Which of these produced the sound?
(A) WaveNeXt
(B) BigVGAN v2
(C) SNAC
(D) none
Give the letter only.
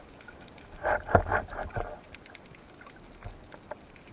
D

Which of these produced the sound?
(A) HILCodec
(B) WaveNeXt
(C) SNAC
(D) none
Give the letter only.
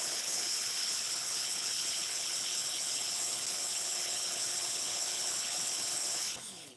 A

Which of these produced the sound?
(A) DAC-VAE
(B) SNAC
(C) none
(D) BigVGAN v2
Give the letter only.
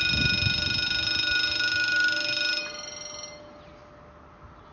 C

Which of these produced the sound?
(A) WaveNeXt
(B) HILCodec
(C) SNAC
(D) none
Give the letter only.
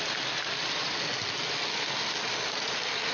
D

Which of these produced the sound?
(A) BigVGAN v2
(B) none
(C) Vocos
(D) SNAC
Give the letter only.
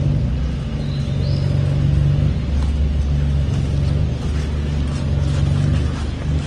B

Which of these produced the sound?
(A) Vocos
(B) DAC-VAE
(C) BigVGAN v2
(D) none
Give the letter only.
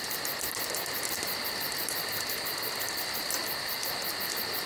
D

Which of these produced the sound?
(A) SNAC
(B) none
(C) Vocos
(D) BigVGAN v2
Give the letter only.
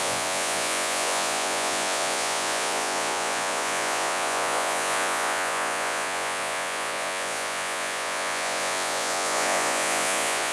C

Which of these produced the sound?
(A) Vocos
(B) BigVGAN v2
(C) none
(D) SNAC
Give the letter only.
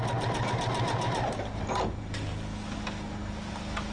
C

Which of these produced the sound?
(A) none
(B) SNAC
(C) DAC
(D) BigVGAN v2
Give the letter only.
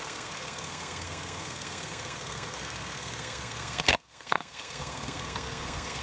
B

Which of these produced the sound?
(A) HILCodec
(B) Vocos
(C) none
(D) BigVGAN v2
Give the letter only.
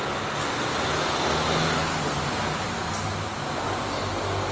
C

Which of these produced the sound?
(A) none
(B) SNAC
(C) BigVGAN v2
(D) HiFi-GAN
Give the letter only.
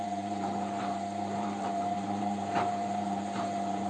C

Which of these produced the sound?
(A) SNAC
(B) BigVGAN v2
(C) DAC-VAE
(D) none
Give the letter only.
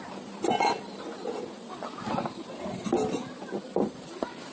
D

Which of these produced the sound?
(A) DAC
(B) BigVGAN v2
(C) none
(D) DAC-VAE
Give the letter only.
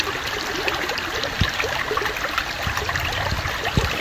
B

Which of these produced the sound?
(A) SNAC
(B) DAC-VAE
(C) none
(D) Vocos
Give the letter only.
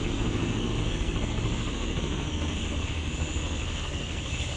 A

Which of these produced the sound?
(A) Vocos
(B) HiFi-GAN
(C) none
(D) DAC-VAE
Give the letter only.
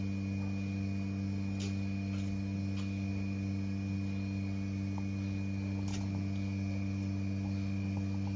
C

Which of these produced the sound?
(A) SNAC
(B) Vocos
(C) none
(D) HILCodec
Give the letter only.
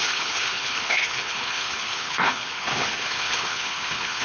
D